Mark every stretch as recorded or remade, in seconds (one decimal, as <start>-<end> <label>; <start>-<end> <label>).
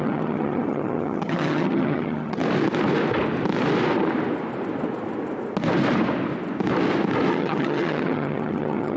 0.0-2.4 remade; 2.4-7.3 recorded; 7.3-9.0 remade